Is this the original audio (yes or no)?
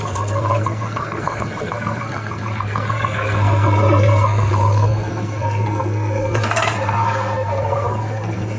no